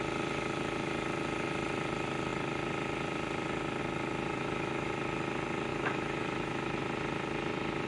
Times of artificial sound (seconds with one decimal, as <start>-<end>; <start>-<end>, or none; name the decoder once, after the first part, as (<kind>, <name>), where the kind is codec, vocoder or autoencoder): 4.3-4.9 (autoencoder, DAC-VAE); 5.7-6.8